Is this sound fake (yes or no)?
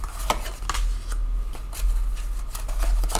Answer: no